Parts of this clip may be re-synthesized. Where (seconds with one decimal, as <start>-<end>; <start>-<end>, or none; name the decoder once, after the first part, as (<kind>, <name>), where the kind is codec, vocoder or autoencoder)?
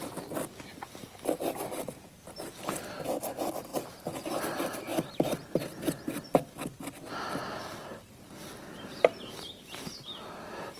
0.7-2.5 (vocoder, BigVGAN v2); 3.7-4.4; 4.9-6.3